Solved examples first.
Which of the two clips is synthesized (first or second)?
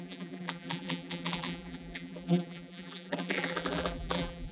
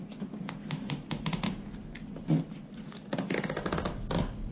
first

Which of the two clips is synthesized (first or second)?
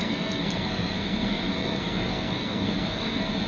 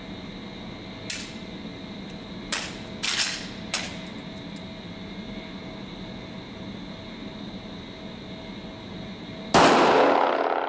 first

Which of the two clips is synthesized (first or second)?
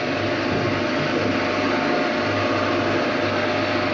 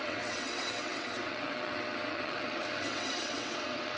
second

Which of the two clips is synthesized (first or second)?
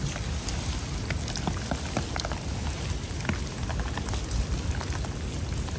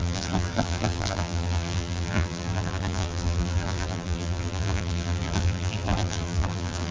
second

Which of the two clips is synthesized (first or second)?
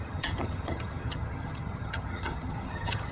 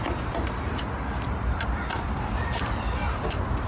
first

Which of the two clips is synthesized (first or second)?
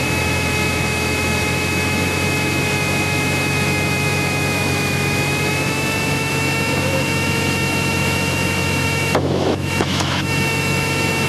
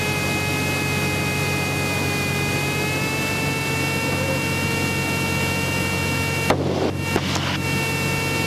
first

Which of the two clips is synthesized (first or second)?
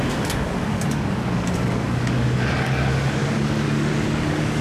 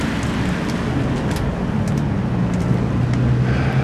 first